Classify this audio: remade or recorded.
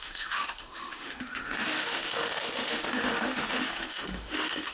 remade